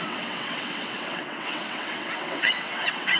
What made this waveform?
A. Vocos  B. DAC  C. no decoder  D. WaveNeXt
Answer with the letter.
D